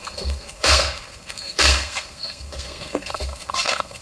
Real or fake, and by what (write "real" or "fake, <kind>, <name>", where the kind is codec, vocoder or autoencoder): fake, codec, SNAC